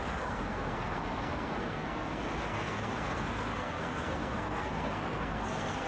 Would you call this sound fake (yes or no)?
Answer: yes